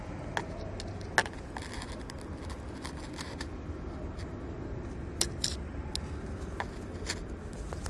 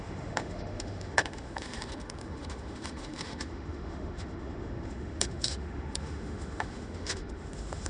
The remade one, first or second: second